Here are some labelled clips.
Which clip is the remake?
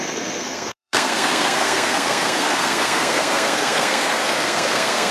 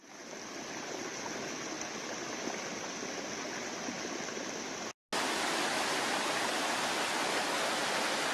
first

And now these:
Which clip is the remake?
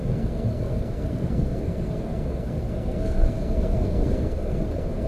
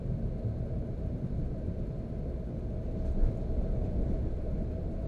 first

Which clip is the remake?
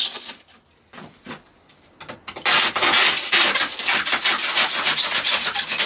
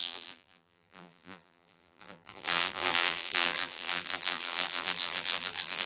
second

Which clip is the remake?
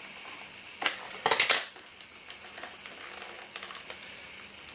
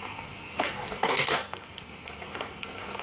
second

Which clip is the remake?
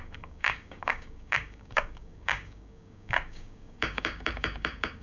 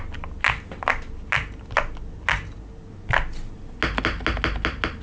first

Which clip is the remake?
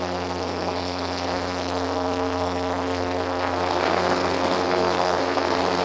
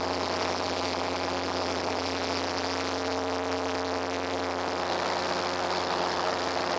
first